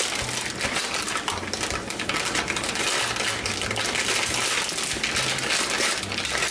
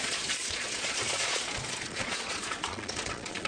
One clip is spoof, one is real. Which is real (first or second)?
first